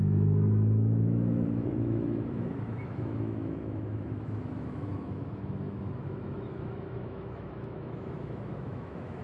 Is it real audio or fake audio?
fake